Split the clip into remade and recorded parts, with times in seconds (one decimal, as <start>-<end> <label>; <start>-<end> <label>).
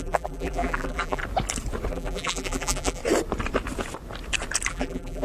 0.0-1.2 remade; 1.2-1.9 recorded; 1.9-3.0 remade; 3.0-4.7 recorded; 4.7-5.2 remade